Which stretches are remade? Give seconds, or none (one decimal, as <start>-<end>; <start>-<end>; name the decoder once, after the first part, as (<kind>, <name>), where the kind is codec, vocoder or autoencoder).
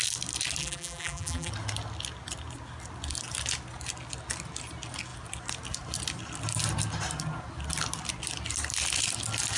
0.6-1.5 (vocoder, BigVGAN v2)